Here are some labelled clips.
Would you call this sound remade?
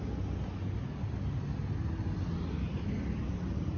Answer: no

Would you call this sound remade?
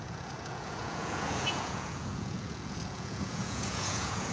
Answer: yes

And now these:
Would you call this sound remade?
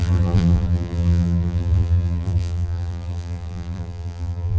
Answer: yes